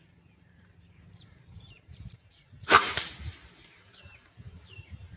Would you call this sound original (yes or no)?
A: no